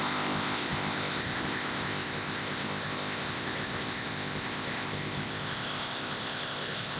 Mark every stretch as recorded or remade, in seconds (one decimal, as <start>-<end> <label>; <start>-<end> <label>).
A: 0.0-7.0 remade